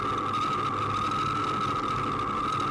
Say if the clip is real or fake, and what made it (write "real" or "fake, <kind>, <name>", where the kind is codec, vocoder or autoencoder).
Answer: real